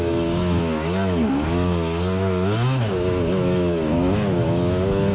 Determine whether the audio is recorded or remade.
remade